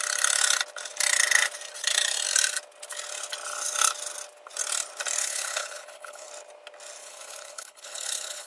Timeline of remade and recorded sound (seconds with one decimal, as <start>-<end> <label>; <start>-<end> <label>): 0.0-5.2 recorded; 5.2-6.3 remade; 6.3-7.0 recorded; 7.0-8.5 remade